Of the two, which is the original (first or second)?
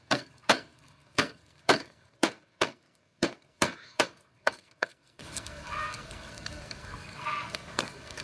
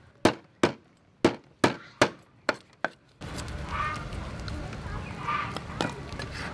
second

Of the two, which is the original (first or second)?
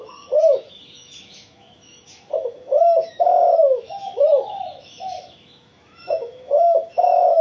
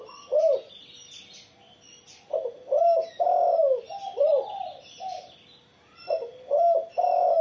second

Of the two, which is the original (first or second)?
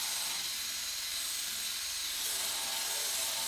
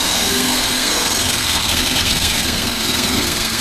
first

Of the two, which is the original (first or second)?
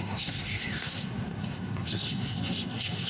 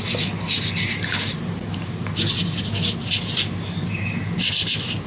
second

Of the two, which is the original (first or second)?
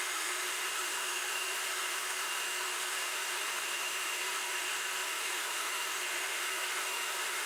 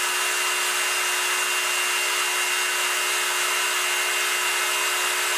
second